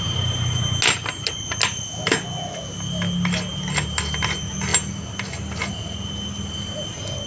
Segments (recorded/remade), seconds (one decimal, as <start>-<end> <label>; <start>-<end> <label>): 0.0-7.3 recorded